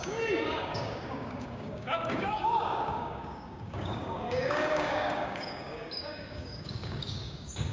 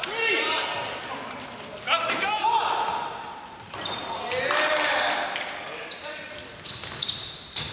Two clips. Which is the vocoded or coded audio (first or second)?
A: first